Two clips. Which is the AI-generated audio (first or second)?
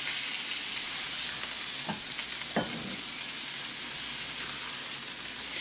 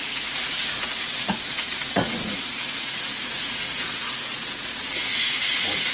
second